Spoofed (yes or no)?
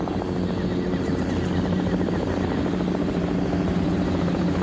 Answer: no